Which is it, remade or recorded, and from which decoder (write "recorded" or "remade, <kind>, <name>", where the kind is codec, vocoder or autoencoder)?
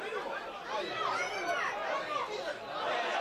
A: recorded